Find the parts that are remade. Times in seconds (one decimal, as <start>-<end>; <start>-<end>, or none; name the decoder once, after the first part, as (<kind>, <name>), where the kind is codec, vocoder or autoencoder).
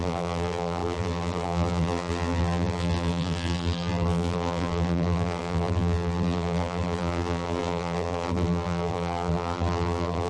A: 0.0-10.3 (vocoder, BigVGAN v2)